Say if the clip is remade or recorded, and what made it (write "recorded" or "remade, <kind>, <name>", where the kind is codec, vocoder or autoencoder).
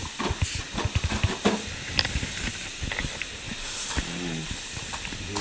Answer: recorded